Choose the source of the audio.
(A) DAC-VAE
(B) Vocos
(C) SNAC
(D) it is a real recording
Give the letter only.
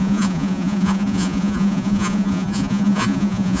B